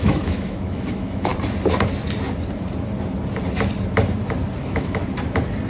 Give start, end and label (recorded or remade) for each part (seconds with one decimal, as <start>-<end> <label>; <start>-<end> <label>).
0.0-1.3 remade; 1.3-4.6 recorded; 4.6-5.0 remade; 5.0-5.7 recorded